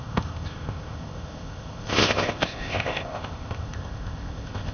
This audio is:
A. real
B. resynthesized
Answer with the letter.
B